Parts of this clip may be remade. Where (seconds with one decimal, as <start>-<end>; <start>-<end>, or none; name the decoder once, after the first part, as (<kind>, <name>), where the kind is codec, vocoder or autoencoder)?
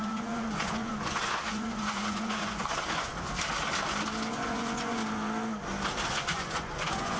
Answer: 0.0-3.1 (vocoder, Vocos); 4.3-5.0; 6.1-7.2